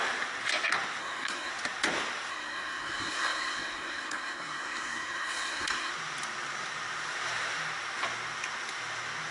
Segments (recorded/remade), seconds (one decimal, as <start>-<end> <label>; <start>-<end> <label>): 0.0-1.0 recorded; 1.0-1.5 remade; 1.5-2.3 recorded; 2.3-5.9 remade; 5.9-9.3 recorded